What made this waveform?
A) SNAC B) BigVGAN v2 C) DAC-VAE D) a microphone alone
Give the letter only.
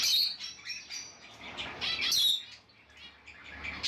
D